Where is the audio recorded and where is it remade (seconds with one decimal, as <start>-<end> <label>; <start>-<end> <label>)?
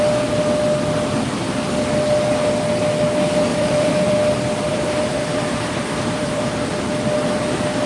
0.0-3.5 recorded; 3.5-4.1 remade; 4.1-4.7 recorded; 4.7-6.7 remade; 6.7-7.9 recorded